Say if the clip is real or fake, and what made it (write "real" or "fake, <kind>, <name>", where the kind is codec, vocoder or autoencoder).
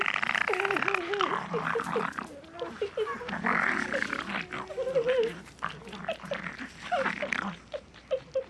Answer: real